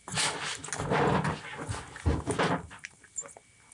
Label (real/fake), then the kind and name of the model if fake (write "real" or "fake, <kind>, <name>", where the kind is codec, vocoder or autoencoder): real